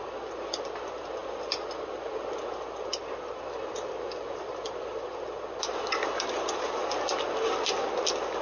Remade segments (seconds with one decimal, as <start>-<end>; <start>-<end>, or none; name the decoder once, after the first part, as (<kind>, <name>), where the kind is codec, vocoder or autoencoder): none